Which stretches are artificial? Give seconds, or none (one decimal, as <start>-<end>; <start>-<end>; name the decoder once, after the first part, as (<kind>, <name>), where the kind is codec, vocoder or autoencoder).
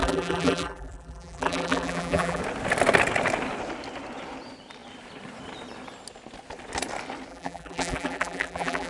0.0-2.4 (vocoder, BigVGAN v2); 7.3-8.9